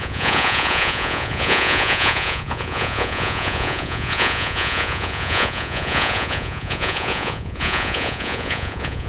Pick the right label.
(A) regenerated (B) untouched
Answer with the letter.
A